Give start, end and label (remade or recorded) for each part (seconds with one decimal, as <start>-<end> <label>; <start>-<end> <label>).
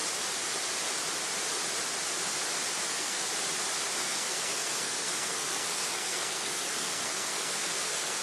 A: 0.0-2.9 recorded; 2.9-3.3 remade; 3.3-4.0 recorded; 4.0-8.2 remade